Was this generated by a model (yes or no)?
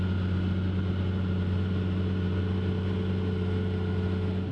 no